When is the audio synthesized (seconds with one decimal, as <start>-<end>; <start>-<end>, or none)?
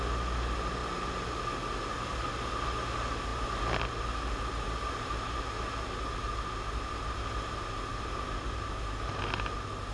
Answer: none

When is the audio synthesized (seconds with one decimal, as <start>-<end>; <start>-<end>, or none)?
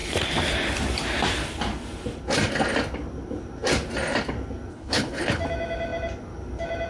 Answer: 4.7-5.4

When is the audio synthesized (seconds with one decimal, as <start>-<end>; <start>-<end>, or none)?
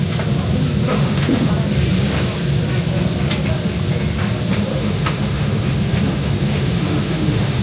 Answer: 0.9-1.5; 4.7-7.6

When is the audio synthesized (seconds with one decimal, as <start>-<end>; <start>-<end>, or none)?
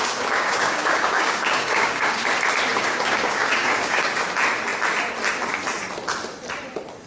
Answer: 0.0-2.2; 2.7-4.2